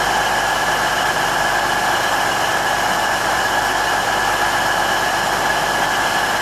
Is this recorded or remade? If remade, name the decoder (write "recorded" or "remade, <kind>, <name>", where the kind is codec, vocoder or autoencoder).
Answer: recorded